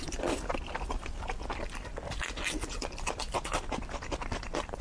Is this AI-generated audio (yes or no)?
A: no